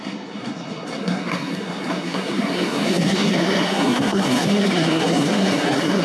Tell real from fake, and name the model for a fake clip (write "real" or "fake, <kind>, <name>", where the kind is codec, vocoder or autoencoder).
fake, codec, SNAC